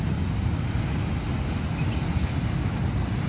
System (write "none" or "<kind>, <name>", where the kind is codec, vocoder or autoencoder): none